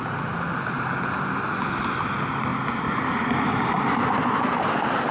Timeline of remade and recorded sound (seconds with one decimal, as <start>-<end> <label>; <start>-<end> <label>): 0.0-5.1 recorded